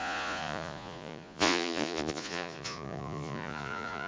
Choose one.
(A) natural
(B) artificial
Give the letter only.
B